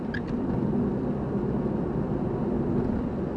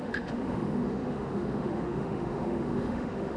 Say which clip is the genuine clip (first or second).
first